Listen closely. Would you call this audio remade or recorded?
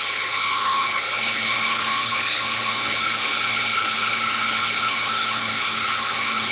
remade